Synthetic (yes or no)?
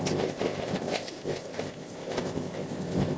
yes